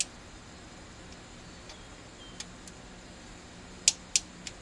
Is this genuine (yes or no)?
yes